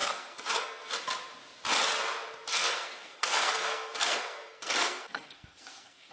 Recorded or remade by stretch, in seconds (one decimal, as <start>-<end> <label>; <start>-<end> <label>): 0.0-0.9 remade; 0.9-2.5 recorded; 2.5-6.1 remade